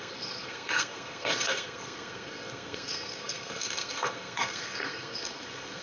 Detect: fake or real fake